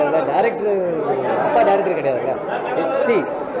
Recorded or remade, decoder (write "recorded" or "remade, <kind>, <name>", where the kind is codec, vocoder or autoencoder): recorded